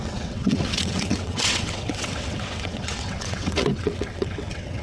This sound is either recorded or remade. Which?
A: remade